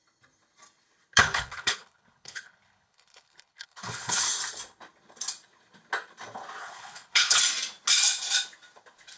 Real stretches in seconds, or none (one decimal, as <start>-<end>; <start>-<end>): 0.0-1.2; 4.2-6.6; 7.4-9.2